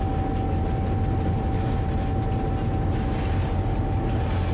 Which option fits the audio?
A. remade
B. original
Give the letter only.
B